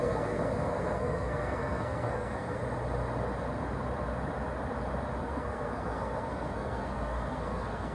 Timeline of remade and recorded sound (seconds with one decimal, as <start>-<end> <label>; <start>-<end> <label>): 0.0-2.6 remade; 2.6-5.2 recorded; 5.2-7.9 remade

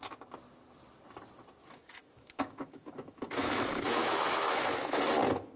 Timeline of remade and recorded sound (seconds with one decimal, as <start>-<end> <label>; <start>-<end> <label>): 0.0-1.6 recorded; 1.6-5.0 remade; 5.0-5.6 recorded

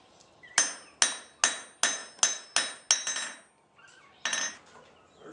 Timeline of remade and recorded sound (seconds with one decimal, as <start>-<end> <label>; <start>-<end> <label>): 0.0-5.3 recorded

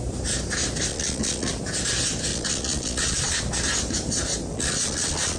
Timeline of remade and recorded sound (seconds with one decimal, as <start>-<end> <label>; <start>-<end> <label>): 0.0-0.9 recorded; 0.9-1.5 remade; 1.5-2.3 recorded; 2.3-3.4 remade; 3.4-4.5 recorded; 4.5-5.4 remade

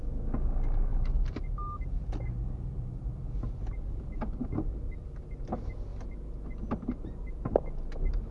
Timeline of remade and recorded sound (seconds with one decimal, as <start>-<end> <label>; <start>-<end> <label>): 0.0-8.3 recorded